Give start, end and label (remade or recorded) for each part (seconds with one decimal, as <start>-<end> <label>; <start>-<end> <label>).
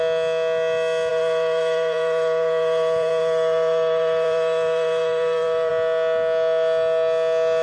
0.0-1.1 recorded; 1.1-5.7 remade; 5.7-7.6 recorded